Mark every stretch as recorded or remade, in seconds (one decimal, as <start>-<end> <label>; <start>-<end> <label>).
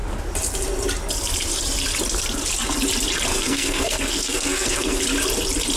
0.0-3.3 recorded; 3.3-5.0 remade; 5.0-5.8 recorded